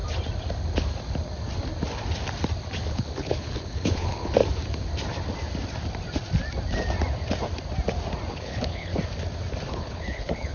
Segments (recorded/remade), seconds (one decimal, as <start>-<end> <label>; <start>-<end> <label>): 0.0-2.9 recorded; 2.9-4.4 remade; 4.4-8.3 recorded; 8.3-8.9 remade; 8.9-9.7 recorded; 9.7-10.5 remade